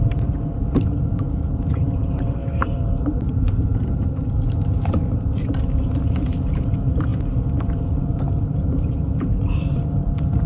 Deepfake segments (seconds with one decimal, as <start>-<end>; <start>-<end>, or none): 0.0-7.1; 7.6-10.5